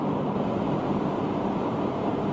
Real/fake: real